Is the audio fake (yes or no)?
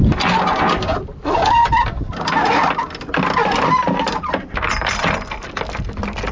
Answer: no